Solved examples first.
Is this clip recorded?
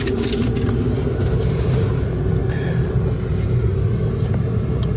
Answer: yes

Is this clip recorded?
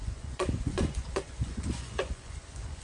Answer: no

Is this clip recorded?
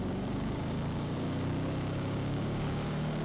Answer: no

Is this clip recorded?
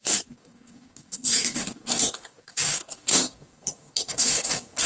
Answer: no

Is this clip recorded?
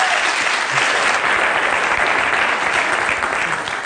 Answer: yes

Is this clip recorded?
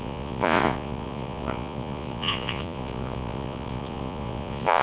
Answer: no